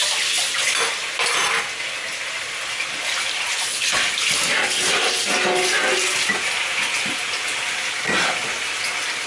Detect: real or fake real